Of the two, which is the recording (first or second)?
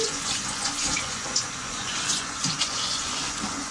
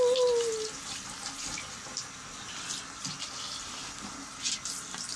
second